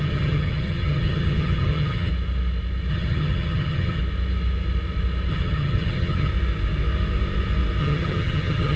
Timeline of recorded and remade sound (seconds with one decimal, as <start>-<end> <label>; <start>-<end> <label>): 0.0-2.1 remade; 2.1-2.9 recorded; 2.9-4.0 remade; 4.0-5.3 recorded; 5.3-6.3 remade; 6.3-7.8 recorded; 7.8-8.8 remade